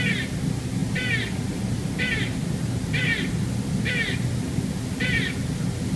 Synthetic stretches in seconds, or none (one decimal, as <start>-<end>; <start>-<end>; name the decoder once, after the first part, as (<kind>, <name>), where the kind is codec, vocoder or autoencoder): none